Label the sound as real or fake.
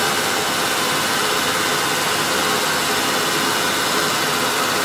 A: real